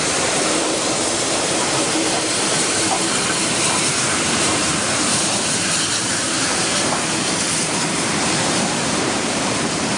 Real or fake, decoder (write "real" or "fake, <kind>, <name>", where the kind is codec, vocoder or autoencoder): fake, vocoder, BigVGAN v2